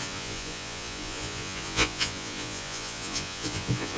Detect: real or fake fake